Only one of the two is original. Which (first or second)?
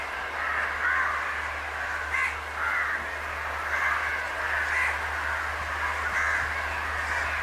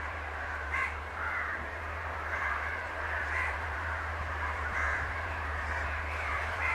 first